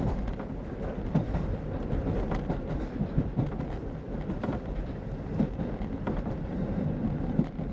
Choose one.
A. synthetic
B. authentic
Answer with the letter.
A